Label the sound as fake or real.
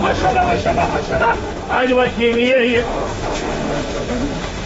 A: fake